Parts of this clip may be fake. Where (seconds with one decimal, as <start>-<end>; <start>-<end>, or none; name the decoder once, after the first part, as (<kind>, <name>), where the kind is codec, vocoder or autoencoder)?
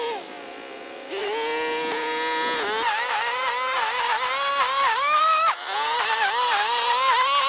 none